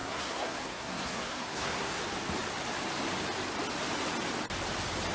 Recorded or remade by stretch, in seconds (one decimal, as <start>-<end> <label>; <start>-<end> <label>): 0.0-2.0 remade; 2.0-5.1 recorded